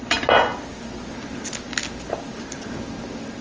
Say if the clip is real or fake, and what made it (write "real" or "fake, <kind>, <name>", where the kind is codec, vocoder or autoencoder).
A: real